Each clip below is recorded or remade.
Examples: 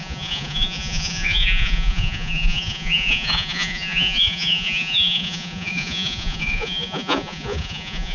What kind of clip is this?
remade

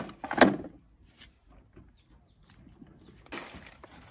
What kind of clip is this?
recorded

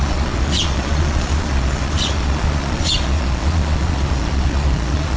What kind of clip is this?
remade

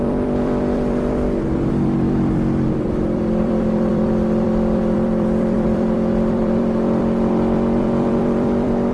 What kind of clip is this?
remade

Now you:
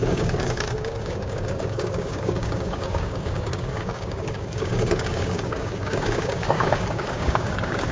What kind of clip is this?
remade